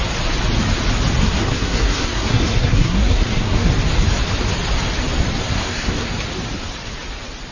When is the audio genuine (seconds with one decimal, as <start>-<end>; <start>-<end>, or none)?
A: 0.0-1.2; 3.7-5.4; 6.1-7.5